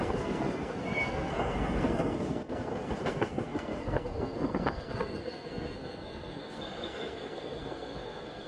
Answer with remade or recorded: remade